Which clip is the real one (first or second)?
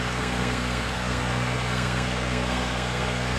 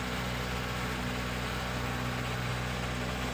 second